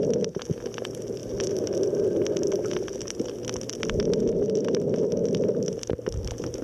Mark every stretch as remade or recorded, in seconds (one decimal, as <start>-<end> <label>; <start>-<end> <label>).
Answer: 0.0-5.2 recorded; 5.2-6.6 remade